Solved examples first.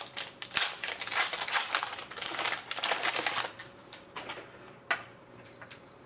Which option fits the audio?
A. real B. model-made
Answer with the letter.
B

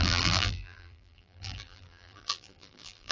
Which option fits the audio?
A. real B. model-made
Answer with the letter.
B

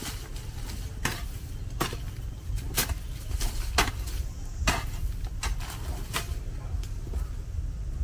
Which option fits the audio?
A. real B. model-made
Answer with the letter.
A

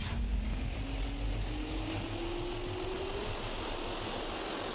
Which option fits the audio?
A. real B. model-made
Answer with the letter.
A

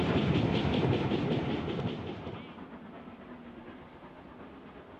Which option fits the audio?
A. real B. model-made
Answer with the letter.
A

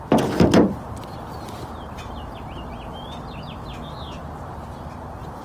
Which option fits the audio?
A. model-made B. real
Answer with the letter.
B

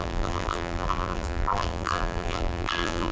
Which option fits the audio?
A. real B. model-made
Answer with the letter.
B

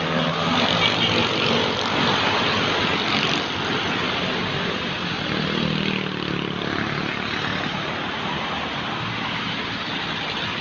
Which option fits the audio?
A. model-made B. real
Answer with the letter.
B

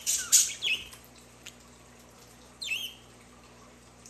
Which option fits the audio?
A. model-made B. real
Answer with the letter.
A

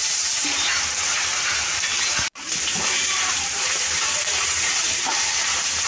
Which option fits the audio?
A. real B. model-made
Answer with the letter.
B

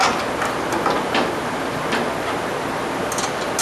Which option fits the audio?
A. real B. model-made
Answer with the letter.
A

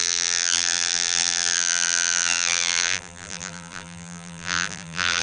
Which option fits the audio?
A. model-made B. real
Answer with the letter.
A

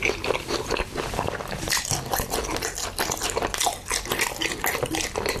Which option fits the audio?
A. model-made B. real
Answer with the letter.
A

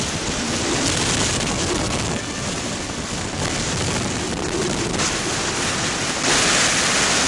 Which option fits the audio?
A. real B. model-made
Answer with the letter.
A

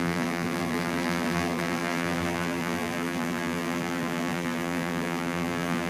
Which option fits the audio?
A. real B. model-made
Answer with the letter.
B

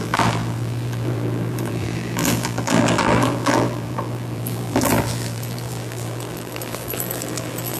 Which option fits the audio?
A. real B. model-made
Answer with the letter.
B